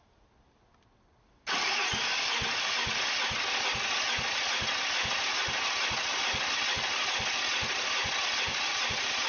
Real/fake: real